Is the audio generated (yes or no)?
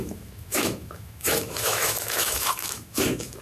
yes